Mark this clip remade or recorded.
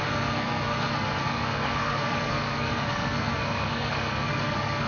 remade